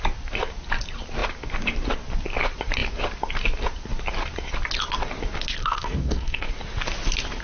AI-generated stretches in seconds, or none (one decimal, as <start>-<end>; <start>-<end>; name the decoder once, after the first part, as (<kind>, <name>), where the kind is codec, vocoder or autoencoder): 5.6-6.5 (codec, SNAC)